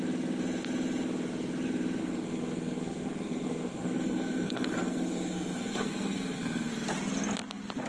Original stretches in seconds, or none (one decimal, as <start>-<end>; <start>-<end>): 0.0-2.0; 6.7-7.9